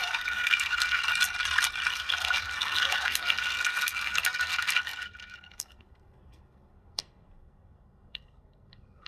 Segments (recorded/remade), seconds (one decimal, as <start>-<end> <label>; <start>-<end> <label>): 0.0-1.1 remade; 1.1-1.9 recorded; 1.9-9.1 remade